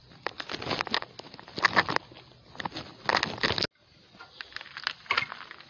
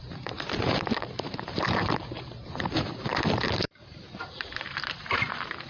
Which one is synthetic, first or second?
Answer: second